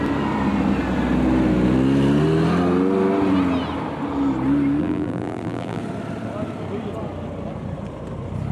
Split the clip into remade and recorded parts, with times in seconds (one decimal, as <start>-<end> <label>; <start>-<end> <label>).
0.0-4.8 recorded; 4.8-5.8 remade; 5.8-8.5 recorded